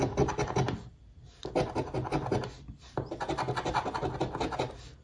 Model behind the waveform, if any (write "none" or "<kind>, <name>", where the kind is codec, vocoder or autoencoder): none